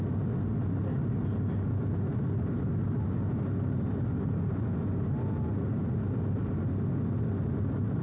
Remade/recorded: recorded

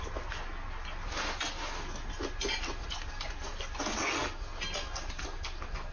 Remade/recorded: recorded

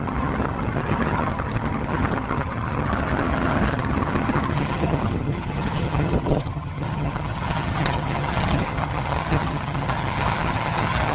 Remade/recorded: remade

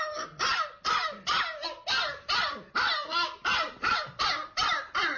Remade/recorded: recorded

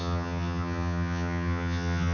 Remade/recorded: remade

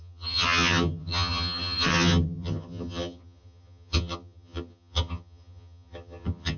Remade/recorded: remade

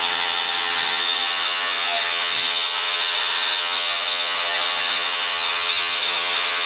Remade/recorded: remade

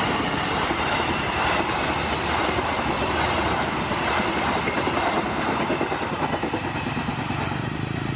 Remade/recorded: recorded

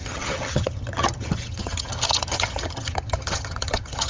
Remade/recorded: remade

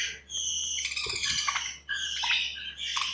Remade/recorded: recorded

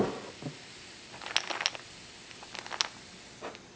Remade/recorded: recorded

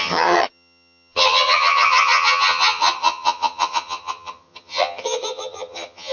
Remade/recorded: remade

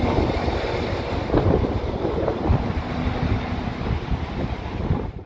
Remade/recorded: recorded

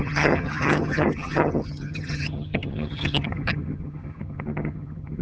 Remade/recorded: remade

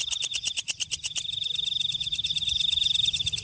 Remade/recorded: recorded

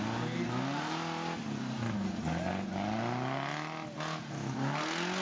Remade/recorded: recorded